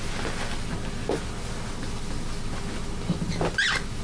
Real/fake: real